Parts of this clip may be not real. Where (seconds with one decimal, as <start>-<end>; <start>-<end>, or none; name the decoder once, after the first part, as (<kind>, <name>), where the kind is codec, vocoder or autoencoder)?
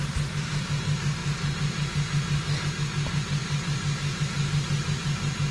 none